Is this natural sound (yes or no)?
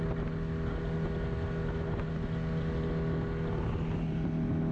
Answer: yes